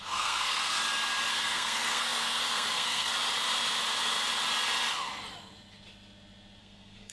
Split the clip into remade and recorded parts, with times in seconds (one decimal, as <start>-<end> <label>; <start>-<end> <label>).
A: 0.0-0.8 remade; 0.8-1.3 recorded; 1.3-3.1 remade; 3.1-6.6 recorded; 6.6-7.1 remade